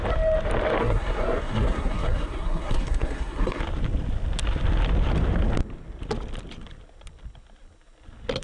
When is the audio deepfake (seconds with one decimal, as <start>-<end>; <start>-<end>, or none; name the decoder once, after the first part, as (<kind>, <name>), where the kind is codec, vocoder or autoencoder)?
0.8-3.6 (codec, SNAC)